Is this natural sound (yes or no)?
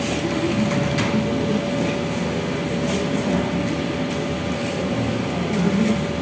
yes